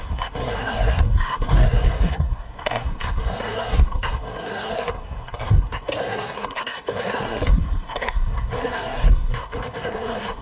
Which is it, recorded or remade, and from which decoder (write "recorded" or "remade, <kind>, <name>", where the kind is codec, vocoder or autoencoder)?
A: remade, codec, SNAC